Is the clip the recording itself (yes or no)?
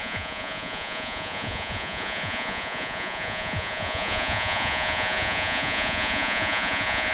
no